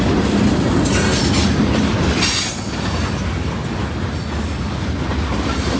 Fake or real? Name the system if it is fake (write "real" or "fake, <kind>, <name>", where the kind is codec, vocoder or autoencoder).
real